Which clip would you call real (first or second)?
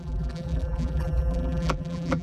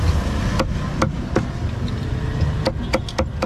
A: second